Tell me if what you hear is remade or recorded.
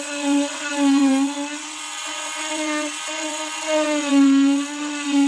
remade